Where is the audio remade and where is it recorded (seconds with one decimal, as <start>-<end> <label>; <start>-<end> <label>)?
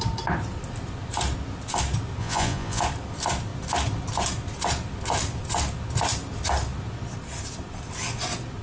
0.0-2.2 recorded; 2.2-2.8 remade; 2.8-8.6 recorded